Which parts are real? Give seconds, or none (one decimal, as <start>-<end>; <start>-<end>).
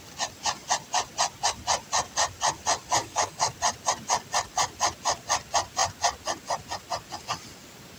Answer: 0.0-3.0; 3.5-8.0